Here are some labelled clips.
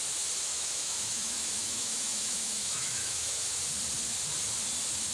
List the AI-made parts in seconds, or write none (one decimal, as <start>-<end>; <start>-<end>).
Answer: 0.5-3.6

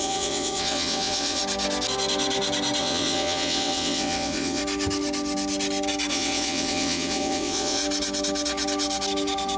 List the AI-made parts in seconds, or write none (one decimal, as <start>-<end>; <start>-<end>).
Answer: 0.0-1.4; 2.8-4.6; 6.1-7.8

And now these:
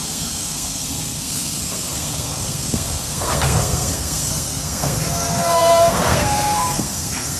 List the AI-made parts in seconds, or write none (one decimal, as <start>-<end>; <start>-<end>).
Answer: 0.0-7.4